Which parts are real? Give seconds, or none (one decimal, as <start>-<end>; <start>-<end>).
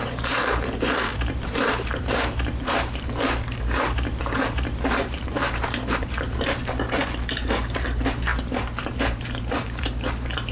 none